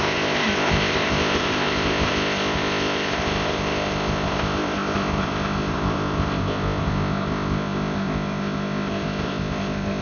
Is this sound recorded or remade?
remade